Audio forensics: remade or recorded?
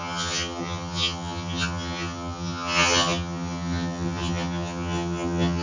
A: remade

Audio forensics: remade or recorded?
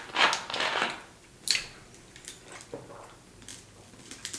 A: recorded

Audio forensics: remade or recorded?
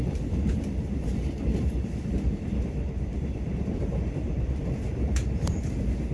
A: remade